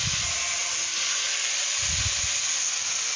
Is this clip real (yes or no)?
yes